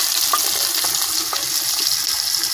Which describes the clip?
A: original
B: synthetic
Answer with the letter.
A